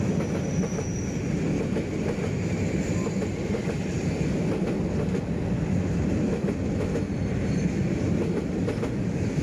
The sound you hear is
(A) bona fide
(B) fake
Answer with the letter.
A